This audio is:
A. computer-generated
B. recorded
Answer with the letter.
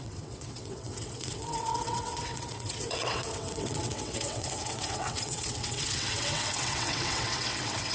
A